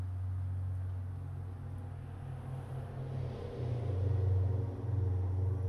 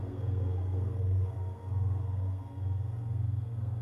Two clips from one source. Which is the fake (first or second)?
second